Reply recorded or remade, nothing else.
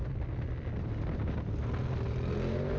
recorded